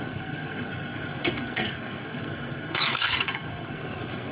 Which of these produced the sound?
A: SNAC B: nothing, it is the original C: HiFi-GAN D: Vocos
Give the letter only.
A